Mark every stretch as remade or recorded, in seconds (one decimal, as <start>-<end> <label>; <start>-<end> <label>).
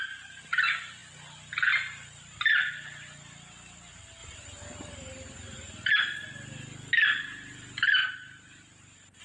0.0-4.2 recorded; 4.2-5.9 remade; 5.9-8.0 recorded; 8.0-9.2 remade